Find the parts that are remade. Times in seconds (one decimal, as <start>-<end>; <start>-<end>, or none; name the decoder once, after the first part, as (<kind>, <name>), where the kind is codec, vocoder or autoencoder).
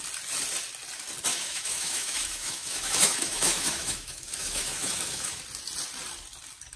1.3-5.4 (autoencoder, DAC-VAE)